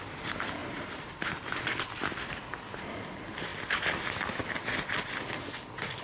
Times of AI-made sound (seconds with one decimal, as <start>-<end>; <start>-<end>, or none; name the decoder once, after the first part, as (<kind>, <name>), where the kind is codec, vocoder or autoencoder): 0.6-2.3 (vocoder, BigVGAN v2); 3.5-4.4